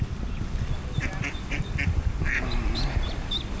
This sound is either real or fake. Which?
real